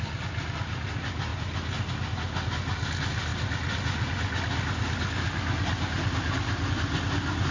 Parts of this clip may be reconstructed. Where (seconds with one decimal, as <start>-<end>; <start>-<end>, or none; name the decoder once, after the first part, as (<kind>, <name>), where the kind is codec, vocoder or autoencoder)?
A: none